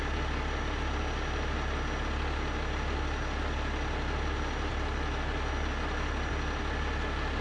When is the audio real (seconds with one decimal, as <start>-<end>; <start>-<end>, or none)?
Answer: 0.0-7.4